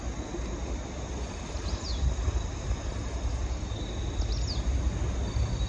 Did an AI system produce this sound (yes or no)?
no